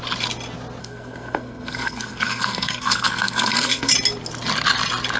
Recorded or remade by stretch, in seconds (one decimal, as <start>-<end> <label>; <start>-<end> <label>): 0.0-0.8 recorded; 0.8-3.9 remade; 3.9-5.2 recorded